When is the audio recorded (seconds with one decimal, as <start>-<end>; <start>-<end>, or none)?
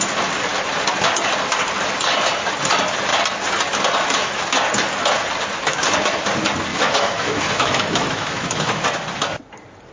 0.0-6.7; 8.8-9.9